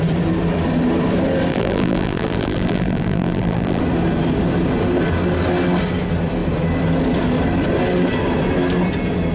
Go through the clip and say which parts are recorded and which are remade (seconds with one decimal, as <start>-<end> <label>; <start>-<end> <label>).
0.0-1.5 recorded; 1.5-3.8 remade; 3.8-9.3 recorded